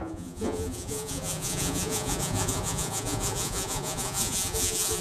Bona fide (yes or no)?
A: no